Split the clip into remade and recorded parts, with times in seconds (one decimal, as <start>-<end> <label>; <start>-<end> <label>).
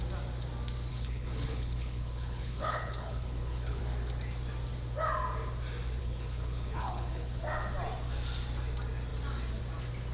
0.0-0.9 recorded; 0.9-3.8 remade; 3.8-6.0 recorded; 6.0-7.4 remade; 7.4-10.1 recorded